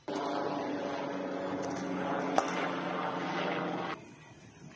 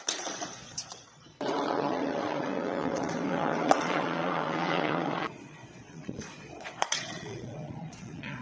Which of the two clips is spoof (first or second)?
second